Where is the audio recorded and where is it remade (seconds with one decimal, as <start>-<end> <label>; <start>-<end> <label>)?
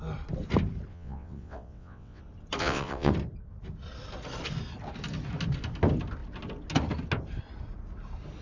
0.0-0.9 recorded; 0.9-2.2 remade; 2.2-2.6 recorded; 2.6-3.1 remade; 3.1-8.4 recorded